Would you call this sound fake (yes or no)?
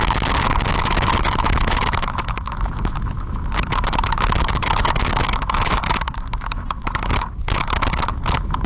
yes